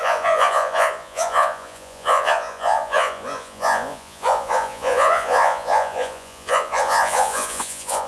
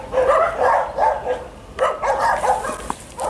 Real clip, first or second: second